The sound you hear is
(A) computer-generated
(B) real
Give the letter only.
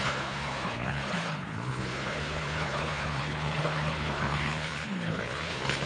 A